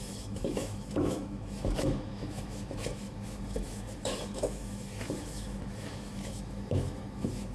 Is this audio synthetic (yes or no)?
yes